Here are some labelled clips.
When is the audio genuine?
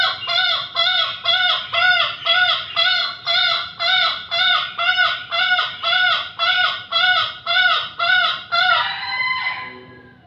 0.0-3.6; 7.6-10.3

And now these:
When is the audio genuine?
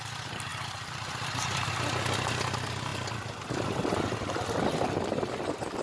0.0-0.5; 1.7-5.8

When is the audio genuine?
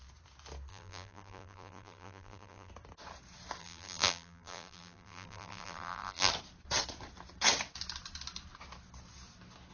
0.0-0.7; 2.7-3.6; 6.3-9.7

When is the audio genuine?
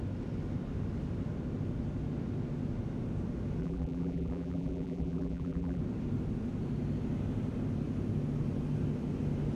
0.0-3.6; 5.8-9.6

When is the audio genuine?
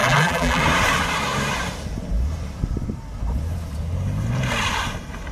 0.6-5.3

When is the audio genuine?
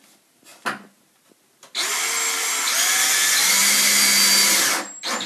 0.0-5.3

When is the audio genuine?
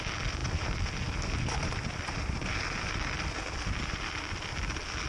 0.0-5.1